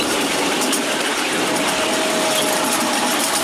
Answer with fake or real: real